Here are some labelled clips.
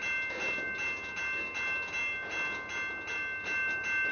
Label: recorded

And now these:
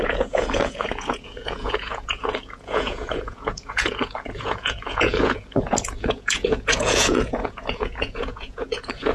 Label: remade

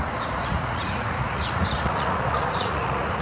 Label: remade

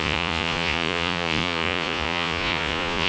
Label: remade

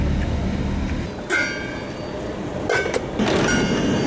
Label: recorded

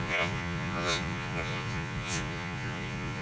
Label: remade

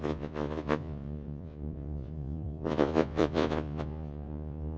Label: remade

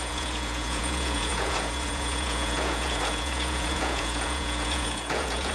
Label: remade